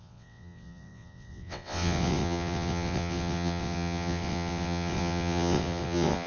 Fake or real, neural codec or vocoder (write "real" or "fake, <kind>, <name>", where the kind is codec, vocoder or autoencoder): fake, vocoder, WaveNeXt